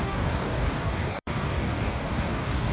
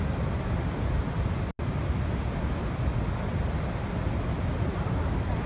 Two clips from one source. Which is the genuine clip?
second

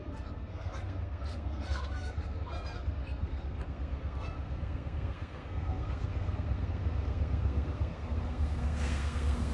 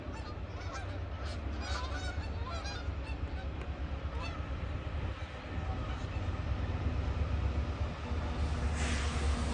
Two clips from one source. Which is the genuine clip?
second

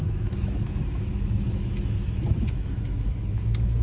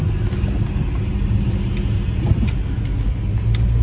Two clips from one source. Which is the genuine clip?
second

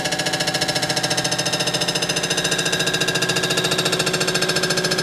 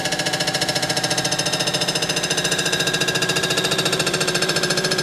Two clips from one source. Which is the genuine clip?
first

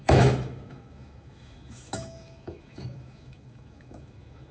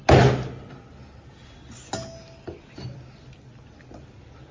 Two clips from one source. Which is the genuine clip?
second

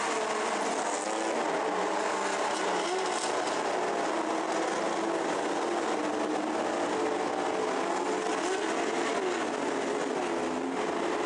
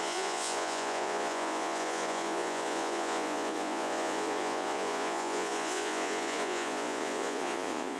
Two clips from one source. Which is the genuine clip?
first